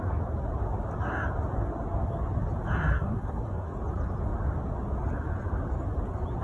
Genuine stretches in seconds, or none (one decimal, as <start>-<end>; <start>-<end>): 0.0-2.9; 3.7-6.4